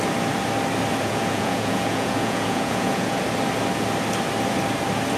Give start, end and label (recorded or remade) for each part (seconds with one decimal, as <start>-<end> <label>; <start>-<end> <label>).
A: 0.0-0.9 recorded; 0.9-3.2 remade; 3.2-5.2 recorded